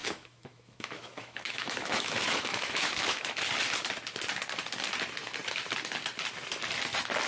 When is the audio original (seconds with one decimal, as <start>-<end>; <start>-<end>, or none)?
3.4-7.3